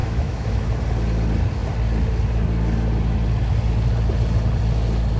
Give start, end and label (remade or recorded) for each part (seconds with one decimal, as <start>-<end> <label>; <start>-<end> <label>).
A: 0.0-0.7 remade; 0.7-5.2 recorded